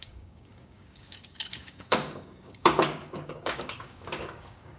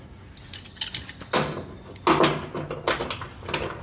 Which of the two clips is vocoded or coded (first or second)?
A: first